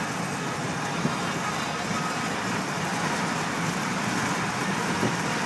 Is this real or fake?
real